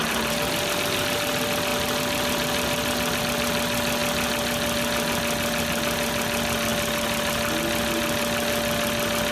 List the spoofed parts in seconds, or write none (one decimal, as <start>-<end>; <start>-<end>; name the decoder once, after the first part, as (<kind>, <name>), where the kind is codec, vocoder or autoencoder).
none